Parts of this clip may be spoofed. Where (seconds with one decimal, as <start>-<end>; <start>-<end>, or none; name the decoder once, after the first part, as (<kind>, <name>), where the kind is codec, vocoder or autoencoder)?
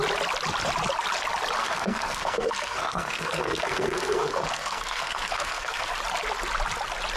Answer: 1.6-5.9 (codec, SNAC)